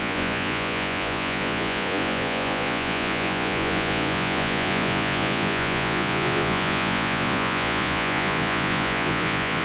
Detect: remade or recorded remade